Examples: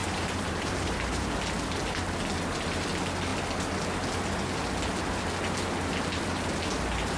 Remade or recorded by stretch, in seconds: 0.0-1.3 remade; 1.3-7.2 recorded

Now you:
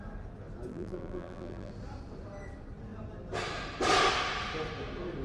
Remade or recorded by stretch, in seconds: 0.0-0.7 recorded; 0.7-1.7 remade; 1.7-5.2 recorded

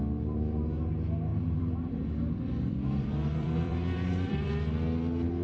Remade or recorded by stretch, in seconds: 0.0-1.3 recorded; 1.3-4.5 remade; 4.5-5.4 recorded

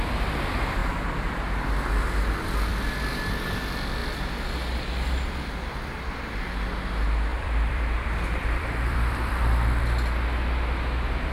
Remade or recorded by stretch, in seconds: 0.0-7.3 recorded; 7.3-9.8 remade; 9.8-11.3 recorded

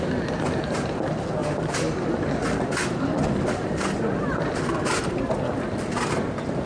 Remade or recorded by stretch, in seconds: 0.0-6.7 recorded

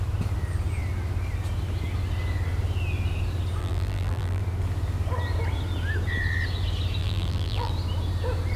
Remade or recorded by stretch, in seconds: 0.0-3.6 recorded; 3.6-4.4 remade; 4.4-7.0 recorded; 7.0-7.7 remade; 7.7-8.6 recorded